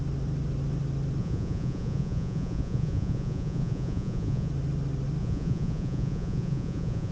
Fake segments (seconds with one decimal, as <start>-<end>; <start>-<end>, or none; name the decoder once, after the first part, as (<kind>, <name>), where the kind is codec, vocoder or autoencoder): 1.2-4.5 (vocoder, Vocos); 5.2-7.1